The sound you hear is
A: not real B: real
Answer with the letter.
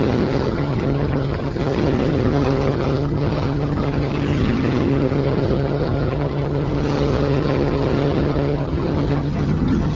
A